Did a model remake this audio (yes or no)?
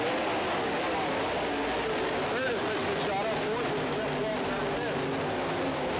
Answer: no